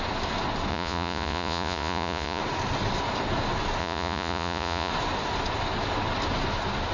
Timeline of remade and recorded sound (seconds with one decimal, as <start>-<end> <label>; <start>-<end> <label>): 0.0-0.7 recorded; 0.7-2.4 remade; 2.4-3.8 recorded; 3.8-4.9 remade; 4.9-6.9 recorded

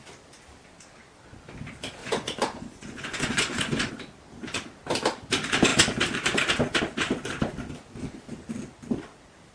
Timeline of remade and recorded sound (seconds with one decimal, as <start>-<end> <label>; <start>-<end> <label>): 0.0-2.0 recorded; 2.0-3.9 remade; 3.9-9.5 recorded

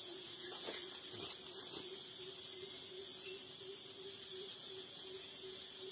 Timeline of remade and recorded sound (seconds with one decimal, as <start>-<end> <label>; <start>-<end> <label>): 0.0-0.8 remade; 0.8-4.3 recorded; 4.3-5.9 remade

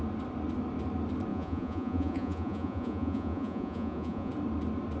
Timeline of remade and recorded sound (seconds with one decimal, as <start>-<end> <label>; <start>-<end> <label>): 0.0-1.3 recorded; 1.3-4.3 remade; 4.3-5.0 recorded

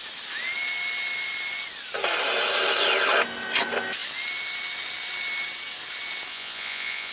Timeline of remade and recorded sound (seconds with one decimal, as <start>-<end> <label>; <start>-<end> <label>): 0.0-6.3 recorded; 6.3-7.1 remade

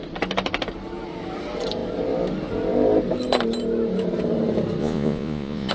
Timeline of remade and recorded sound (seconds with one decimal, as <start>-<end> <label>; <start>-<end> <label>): 0.0-4.8 recorded; 4.8-5.7 remade

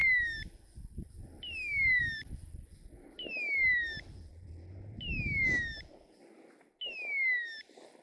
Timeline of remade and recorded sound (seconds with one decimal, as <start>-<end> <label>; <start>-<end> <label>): 0.0-8.0 recorded

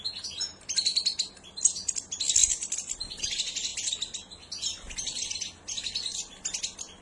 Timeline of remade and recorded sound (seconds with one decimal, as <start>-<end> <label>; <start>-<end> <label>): 0.0-7.0 recorded